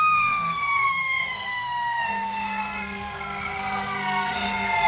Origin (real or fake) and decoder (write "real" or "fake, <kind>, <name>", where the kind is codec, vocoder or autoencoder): fake, codec, SNAC